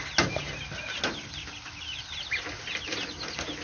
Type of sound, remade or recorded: recorded